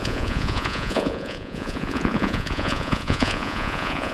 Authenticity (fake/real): fake